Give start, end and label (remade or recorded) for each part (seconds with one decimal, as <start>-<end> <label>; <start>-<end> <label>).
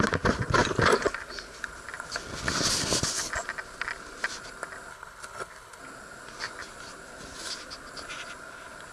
0.0-4.9 recorded; 4.9-5.8 remade; 5.8-8.9 recorded